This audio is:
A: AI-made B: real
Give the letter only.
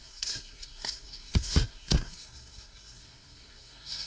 A